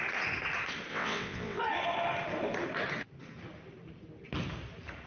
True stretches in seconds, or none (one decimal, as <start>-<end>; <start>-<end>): 0.0-0.9; 1.6-5.1